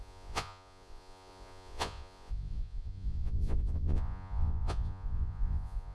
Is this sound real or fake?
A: fake